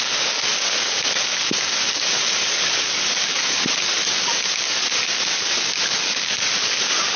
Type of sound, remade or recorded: remade